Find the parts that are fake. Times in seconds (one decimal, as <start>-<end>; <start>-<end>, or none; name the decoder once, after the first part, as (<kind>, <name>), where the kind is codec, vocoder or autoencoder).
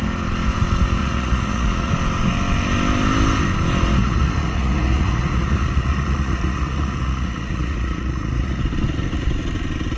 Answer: 1.0-1.9 (vocoder, Vocos); 4.0-8.6